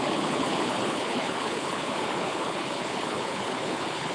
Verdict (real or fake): fake